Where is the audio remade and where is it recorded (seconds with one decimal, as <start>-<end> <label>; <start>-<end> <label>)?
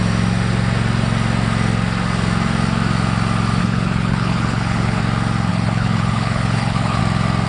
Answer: 0.0-3.6 recorded; 3.6-5.0 remade; 5.0-5.5 recorded; 5.5-7.0 remade; 7.0-7.5 recorded